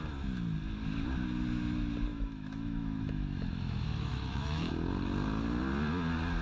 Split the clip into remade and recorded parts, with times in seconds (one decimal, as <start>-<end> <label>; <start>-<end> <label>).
0.0-2.1 recorded; 2.1-4.7 remade; 4.7-6.4 recorded